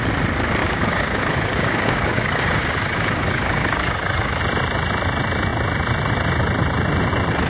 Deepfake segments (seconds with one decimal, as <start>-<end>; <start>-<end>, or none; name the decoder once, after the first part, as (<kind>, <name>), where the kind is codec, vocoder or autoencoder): 0.6-4.4 (codec, DAC)